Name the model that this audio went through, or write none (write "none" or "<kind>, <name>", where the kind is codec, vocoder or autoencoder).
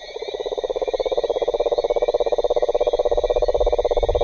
vocoder, BigVGAN v2